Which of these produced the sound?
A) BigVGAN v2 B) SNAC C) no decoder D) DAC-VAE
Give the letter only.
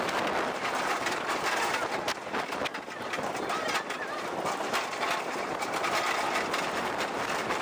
C